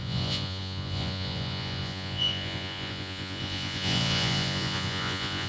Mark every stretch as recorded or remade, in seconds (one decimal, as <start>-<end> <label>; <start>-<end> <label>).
0.0-5.5 remade